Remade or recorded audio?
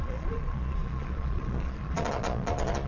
remade